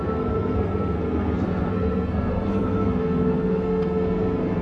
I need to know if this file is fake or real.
fake